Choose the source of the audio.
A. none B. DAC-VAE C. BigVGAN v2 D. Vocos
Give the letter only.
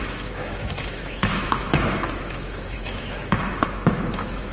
B